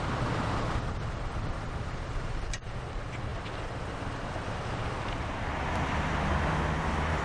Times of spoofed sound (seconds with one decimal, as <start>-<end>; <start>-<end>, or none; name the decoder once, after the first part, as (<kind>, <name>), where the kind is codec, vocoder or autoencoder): 3.3-6.4 (vocoder, BigVGAN v2)